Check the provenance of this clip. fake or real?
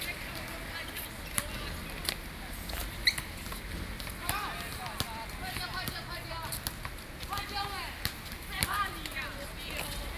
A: real